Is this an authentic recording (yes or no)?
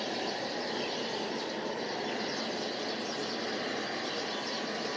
yes